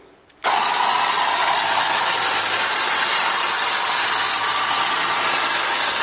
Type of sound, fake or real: real